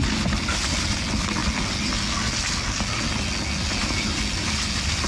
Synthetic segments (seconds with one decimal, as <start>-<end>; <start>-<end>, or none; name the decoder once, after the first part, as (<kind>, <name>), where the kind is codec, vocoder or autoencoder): none